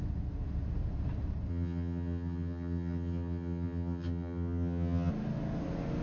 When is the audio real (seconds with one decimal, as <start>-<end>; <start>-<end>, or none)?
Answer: 0.0-1.5; 5.1-6.0